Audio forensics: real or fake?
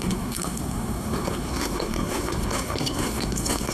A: fake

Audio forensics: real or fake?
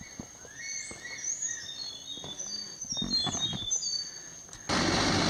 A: real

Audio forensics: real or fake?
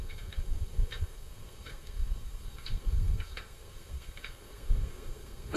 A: fake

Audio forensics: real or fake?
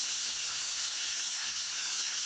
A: fake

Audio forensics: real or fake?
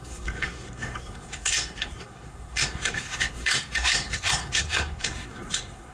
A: fake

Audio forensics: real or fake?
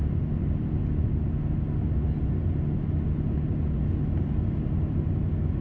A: real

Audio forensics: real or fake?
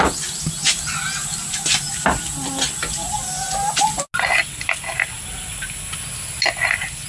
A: real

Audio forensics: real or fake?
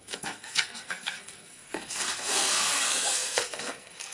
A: fake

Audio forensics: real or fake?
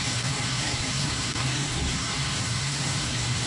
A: fake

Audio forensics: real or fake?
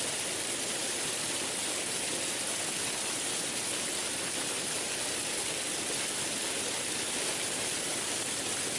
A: real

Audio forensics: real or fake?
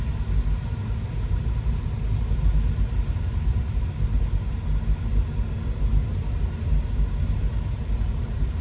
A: real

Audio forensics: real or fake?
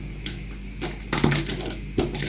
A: real